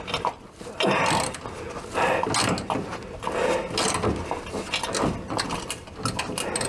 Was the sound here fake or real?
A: real